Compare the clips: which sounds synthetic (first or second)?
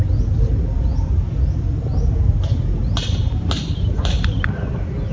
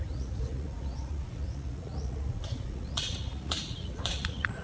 second